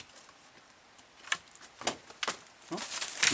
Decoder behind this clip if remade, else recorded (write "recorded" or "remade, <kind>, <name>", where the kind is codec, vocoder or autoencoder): recorded